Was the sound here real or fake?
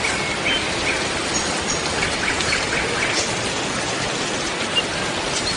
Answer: real